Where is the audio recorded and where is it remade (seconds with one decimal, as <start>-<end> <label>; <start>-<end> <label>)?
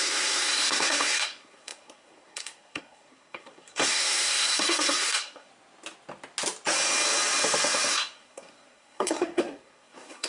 0.0-5.5 remade; 5.5-7.9 recorded; 7.9-10.3 remade